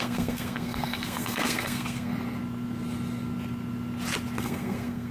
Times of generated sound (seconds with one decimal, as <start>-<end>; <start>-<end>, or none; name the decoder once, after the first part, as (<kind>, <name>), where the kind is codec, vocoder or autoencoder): 0.0-2.1 (codec, SNAC); 4.4-5.1